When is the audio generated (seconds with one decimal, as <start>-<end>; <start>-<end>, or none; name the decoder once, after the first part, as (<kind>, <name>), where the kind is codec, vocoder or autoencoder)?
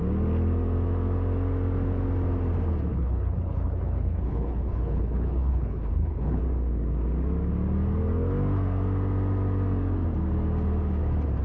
2.9-6.4 (codec, HILCodec)